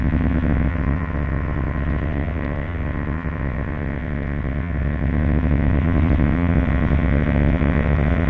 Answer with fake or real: fake